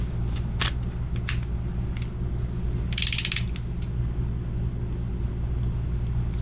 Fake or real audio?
real